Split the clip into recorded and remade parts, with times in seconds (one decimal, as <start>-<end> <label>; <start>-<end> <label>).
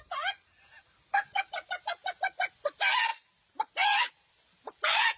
0.0-5.2 recorded